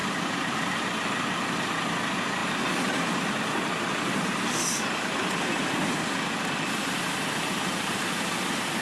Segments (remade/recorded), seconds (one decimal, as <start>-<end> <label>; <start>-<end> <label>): 0.0-0.7 remade; 0.7-2.4 recorded; 2.4-5.5 remade; 5.5-8.8 recorded